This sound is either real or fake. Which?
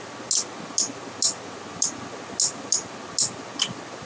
real